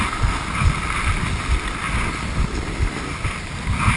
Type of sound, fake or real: real